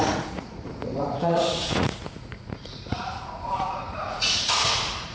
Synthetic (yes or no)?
yes